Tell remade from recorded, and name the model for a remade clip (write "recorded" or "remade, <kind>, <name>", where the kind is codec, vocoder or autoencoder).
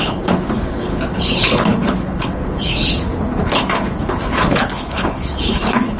remade, codec, HILCodec